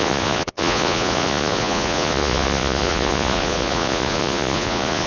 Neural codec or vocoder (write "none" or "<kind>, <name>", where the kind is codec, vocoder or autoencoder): vocoder, Vocos